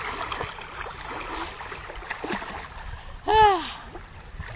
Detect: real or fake real